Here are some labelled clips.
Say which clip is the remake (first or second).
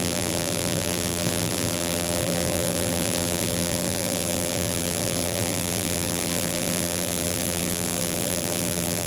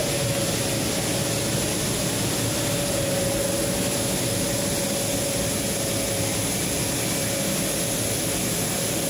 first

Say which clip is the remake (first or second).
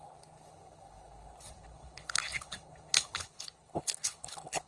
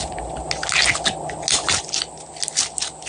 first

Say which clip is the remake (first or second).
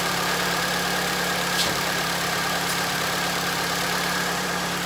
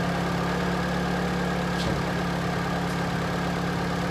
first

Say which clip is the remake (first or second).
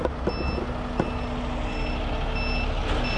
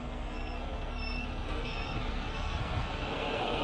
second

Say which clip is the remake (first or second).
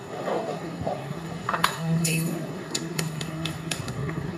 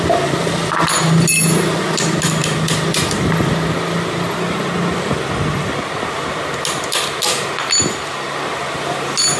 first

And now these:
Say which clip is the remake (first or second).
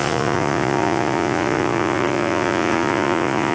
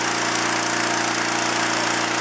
first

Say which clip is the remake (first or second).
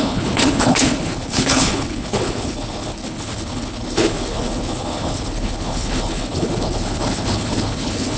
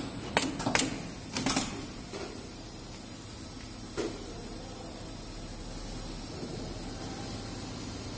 first